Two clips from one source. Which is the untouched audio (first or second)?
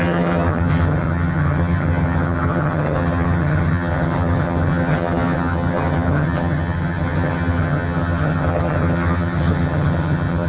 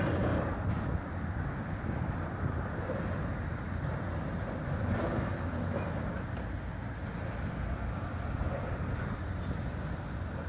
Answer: second